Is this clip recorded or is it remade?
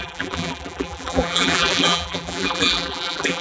remade